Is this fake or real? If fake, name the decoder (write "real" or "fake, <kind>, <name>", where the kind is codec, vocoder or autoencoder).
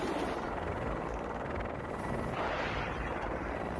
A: real